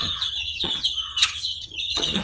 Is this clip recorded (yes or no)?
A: no